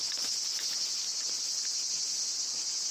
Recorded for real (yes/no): yes